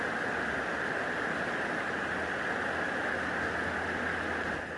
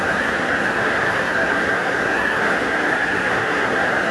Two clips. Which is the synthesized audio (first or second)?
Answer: second